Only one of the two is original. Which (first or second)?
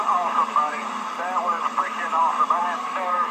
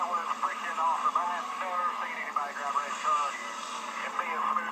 second